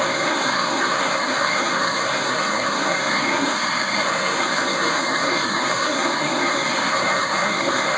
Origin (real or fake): fake